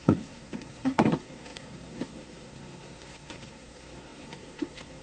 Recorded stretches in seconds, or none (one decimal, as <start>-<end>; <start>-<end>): none